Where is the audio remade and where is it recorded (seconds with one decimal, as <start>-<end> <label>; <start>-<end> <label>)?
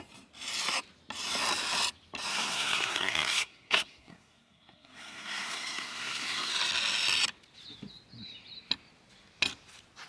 0.0-2.3 recorded; 2.3-6.5 remade; 6.5-10.1 recorded